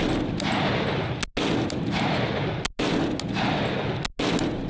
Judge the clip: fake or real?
real